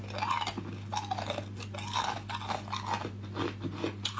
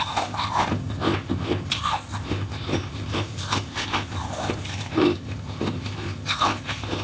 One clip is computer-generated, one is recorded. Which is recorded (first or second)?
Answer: first